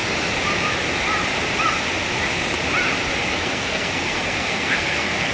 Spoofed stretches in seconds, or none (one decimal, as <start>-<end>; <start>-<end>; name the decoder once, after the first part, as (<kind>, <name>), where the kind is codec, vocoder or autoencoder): 3.2-5.3 (codec, SNAC)